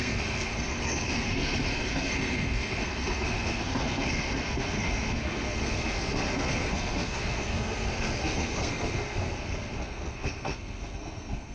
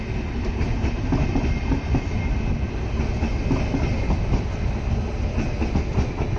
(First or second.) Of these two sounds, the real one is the second